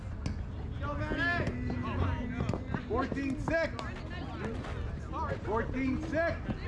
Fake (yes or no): no